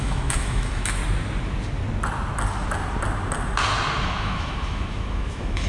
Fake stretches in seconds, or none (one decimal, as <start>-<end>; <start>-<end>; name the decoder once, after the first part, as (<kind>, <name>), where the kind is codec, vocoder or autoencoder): 0.0-1.0 (autoencoder, DAC-VAE); 4.0-5.7